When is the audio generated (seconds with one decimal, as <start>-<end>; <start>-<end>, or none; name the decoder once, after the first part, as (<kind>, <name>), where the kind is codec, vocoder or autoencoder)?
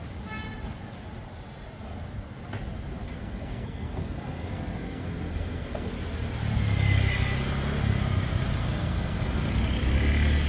3.0-5.9 (codec, SNAC); 8.6-9.4